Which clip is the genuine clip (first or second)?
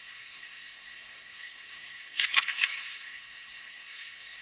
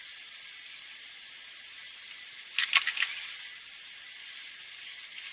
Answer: second